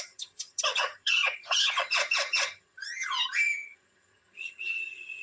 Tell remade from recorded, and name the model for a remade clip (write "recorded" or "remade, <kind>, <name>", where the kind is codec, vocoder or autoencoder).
remade, vocoder, HiFi-GAN